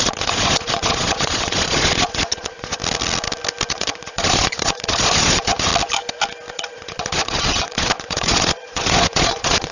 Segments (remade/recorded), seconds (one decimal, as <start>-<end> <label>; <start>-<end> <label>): 0.0-2.8 remade; 2.8-3.7 recorded; 3.7-5.7 remade; 5.7-6.5 recorded; 6.5-9.7 remade